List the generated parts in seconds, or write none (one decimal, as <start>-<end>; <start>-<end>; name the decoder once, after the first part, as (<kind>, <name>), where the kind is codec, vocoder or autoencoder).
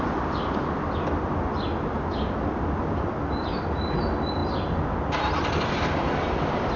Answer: none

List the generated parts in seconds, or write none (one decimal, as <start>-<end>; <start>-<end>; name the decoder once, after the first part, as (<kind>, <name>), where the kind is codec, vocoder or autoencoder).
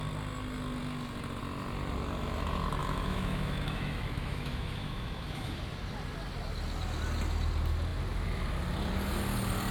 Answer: 2.8-5.6 (autoencoder, DAC-VAE)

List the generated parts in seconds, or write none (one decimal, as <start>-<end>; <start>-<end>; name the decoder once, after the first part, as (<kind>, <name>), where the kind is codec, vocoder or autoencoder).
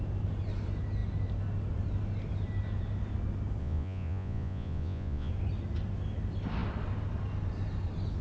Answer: 3.6-5.3 (vocoder, Vocos)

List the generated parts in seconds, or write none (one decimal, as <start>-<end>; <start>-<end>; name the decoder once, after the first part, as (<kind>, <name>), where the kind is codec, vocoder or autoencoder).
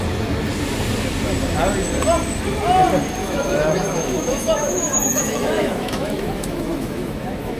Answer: 3.2-7.6 (autoencoder, DAC-VAE)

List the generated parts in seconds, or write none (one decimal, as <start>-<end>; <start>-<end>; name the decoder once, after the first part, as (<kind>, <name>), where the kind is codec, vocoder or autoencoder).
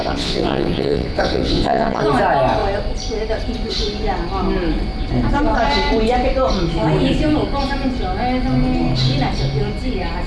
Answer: 0.0-2.0 (vocoder, WaveNeXt)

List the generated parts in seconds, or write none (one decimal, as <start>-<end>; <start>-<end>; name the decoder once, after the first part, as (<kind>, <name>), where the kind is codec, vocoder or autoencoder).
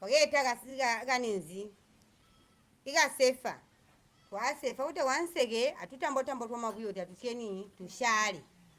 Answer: none